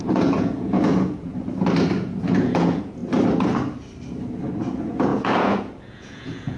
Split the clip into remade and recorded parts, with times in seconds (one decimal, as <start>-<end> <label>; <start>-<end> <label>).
0.0-1.3 remade; 1.3-2.0 recorded; 2.0-3.0 remade; 3.0-4.6 recorded; 4.6-6.6 remade

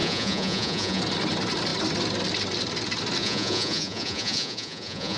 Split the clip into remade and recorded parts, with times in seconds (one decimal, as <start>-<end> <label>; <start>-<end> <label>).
0.0-1.0 remade; 1.0-3.2 recorded; 3.2-5.2 remade

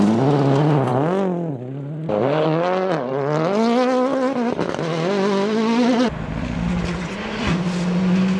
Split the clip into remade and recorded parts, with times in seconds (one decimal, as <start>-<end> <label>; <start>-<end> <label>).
0.0-8.4 recorded